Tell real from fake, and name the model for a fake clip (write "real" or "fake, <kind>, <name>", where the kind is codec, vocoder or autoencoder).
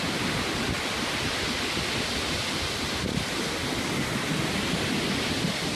real